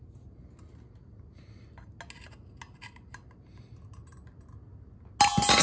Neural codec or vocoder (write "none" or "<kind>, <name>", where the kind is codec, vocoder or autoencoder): none